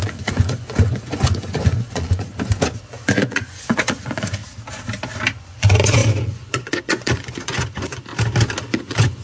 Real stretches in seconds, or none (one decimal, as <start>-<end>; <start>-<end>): 2.3-2.9; 4.4-5.4; 8.1-8.7